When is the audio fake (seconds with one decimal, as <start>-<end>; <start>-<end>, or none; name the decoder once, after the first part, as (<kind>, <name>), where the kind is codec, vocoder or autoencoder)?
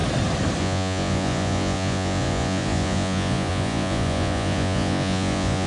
0.6-5.7 (vocoder, Vocos)